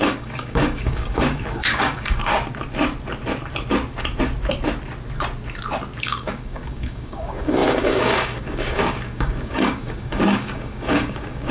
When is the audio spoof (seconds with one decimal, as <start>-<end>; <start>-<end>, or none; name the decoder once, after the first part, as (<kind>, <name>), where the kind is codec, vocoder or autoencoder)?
0.0-2.3 (codec, DAC); 6.0-11.5